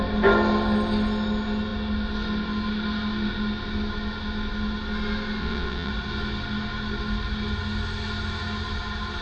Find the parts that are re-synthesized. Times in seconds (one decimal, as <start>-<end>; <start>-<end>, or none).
5.4-5.9